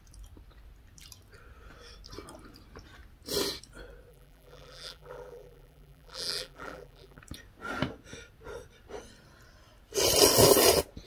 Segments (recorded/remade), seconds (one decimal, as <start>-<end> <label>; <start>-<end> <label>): 0.0-4.1 recorded; 4.1-7.2 remade; 7.2-11.1 recorded